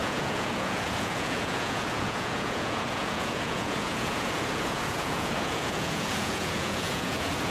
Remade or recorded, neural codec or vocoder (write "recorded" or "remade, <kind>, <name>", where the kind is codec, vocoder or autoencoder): remade, vocoder, Vocos